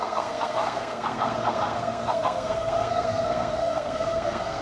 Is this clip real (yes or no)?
no